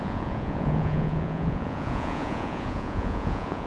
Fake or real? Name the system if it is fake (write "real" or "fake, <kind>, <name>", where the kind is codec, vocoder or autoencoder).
fake, vocoder, Vocos